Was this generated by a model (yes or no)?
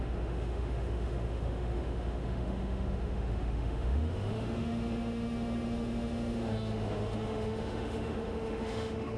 yes